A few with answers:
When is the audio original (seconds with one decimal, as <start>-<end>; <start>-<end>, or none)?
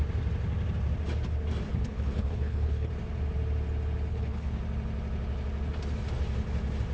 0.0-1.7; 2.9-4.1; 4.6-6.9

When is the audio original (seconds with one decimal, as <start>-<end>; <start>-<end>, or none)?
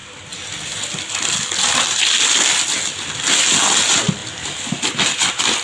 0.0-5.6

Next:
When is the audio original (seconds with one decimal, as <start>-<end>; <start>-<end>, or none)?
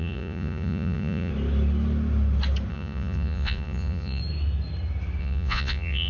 1.3-2.7; 4.2-5.2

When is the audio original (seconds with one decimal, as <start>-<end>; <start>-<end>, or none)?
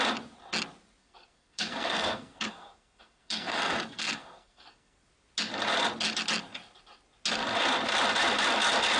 0.0-1.0; 5.1-9.0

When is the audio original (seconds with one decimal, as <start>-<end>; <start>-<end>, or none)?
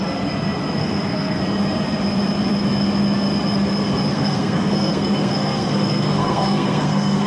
0.0-0.8; 1.4-4.1